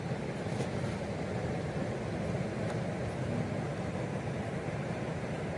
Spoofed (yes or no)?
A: no